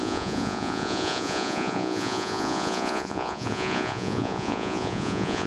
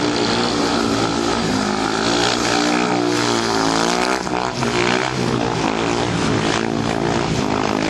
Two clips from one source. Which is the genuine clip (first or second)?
second